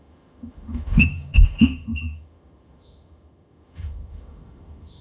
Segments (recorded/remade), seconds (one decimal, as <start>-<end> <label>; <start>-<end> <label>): 0.0-5.0 remade

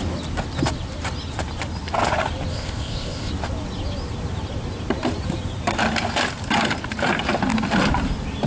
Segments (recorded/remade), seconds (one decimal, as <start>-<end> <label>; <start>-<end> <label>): 0.0-2.5 recorded; 2.5-3.3 remade; 3.3-8.5 recorded

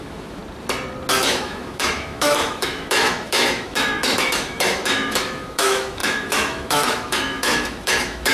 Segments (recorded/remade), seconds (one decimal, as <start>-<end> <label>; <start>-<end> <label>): 0.0-0.4 remade; 0.4-1.2 recorded; 1.2-8.3 remade

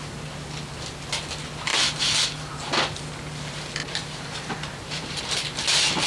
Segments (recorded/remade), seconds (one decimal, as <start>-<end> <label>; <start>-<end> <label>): 0.0-3.8 recorded; 3.8-5.2 remade; 5.2-6.1 recorded

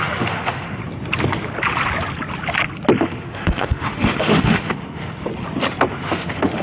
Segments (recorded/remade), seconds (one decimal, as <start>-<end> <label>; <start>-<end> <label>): 0.0-0.8 remade; 0.8-3.0 recorded; 3.0-5.3 remade; 5.3-5.9 recorded; 5.9-6.6 remade